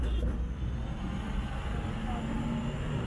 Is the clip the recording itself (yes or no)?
yes